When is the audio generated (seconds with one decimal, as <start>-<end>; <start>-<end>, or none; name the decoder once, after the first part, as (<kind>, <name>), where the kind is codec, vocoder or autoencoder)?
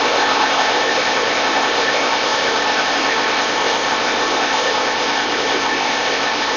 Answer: 0.0-6.6 (codec, ZipCodec)